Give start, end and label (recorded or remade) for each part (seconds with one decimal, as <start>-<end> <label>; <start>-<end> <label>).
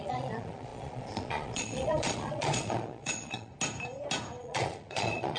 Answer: 0.0-3.5 remade; 3.5-4.4 recorded; 4.4-5.4 remade